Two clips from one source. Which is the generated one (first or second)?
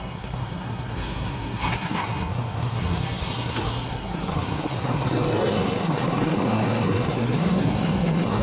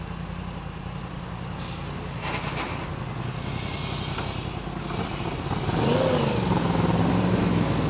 first